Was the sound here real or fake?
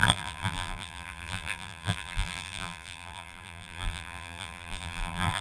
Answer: fake